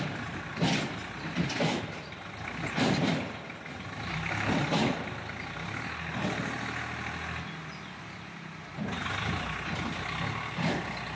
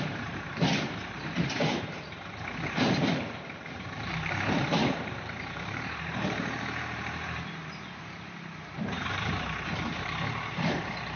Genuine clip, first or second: first